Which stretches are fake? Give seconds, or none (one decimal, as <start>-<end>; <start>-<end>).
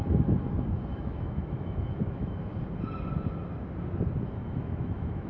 0.9-2.4; 4.4-5.3